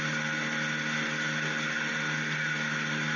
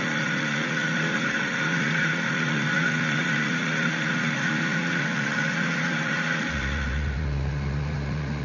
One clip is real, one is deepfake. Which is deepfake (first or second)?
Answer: second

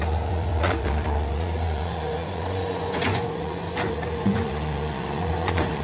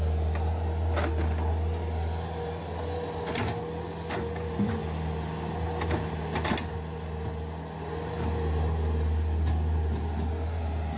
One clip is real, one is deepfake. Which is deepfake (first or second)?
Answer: first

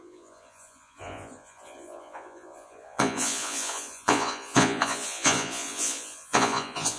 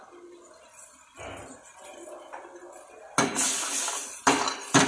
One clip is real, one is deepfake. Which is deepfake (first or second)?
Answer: first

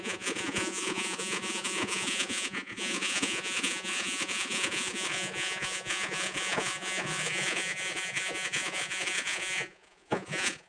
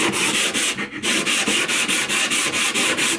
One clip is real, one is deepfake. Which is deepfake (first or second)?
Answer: first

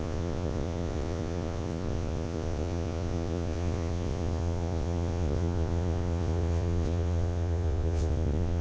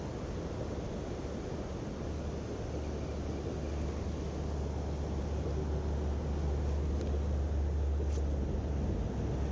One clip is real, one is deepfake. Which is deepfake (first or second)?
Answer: first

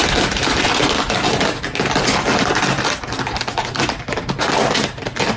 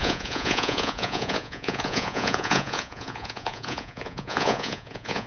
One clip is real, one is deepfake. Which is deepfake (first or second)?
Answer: second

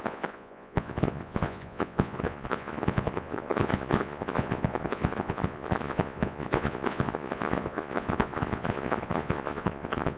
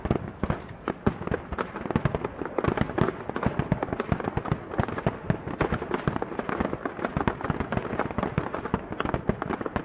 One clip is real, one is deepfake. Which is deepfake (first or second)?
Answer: first